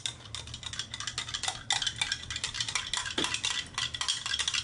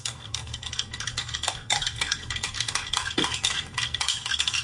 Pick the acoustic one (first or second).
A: first